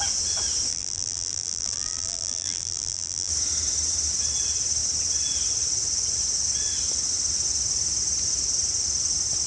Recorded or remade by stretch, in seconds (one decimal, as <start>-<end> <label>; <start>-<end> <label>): 0.0-0.7 recorded; 0.7-3.3 remade; 3.3-9.5 recorded